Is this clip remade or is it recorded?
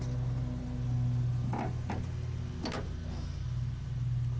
recorded